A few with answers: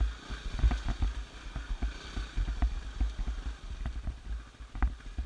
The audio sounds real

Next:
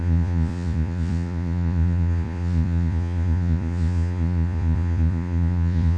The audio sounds fake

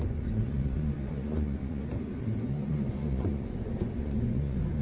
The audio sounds fake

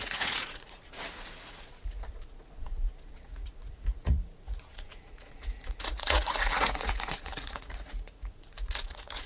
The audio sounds fake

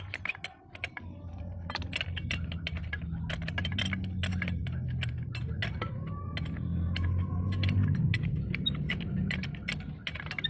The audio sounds real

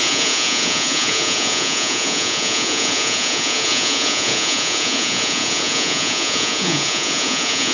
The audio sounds fake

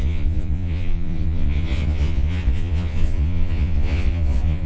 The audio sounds fake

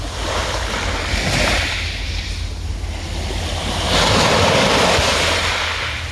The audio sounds real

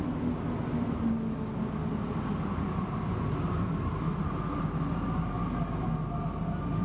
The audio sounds real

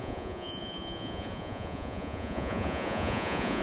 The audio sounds fake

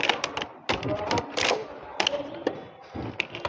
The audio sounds real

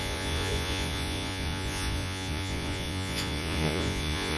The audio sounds fake